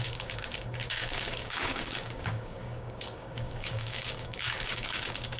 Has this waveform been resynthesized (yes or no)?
yes